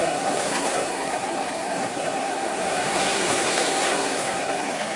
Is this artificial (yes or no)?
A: yes